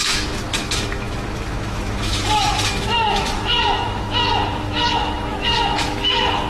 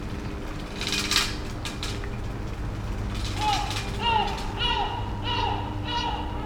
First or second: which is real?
second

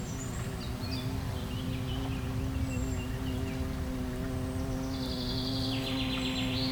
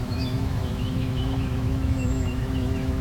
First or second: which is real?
first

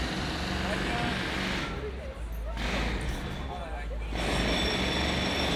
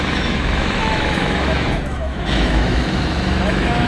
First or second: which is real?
first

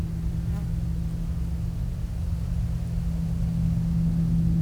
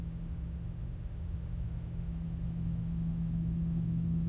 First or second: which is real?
first